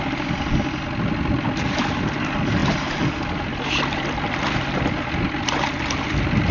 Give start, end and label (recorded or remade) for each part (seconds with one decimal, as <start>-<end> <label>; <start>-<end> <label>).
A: 0.0-6.5 recorded